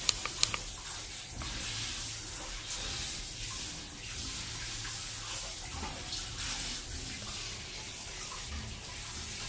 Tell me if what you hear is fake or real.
real